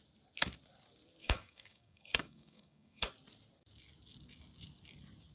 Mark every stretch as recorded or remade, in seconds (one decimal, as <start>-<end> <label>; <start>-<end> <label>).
0.0-1.2 recorded; 1.2-3.1 remade; 3.1-5.3 recorded